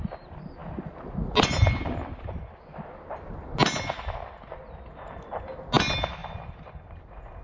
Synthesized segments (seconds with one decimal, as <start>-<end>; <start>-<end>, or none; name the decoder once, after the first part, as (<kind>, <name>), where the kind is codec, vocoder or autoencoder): none